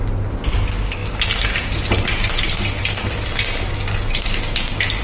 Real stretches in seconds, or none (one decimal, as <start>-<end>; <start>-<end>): 0.0-5.0